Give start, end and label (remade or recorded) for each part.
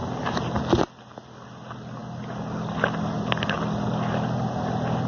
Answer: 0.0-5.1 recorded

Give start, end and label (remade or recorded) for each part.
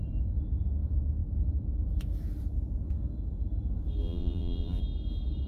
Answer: 0.0-4.0 recorded; 4.0-4.8 remade; 4.8-5.5 recorded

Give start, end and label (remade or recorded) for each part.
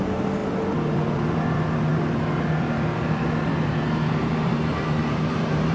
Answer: 0.0-5.7 remade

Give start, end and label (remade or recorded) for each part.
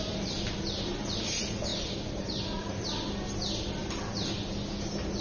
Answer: 0.0-1.7 recorded; 1.7-2.9 remade; 2.9-5.2 recorded